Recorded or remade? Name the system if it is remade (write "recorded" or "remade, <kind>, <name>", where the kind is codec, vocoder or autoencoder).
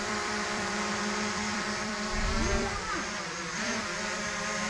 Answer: remade, vocoder, BigVGAN v2